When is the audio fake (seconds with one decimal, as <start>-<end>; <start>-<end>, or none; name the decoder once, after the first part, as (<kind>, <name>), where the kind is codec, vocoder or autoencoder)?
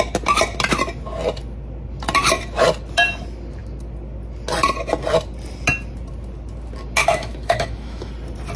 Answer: 7.0-8.1 (autoencoder, DAC-VAE)